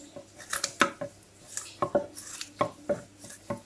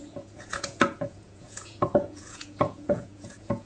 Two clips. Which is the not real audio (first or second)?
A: second